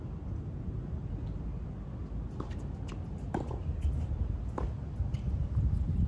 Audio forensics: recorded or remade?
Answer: recorded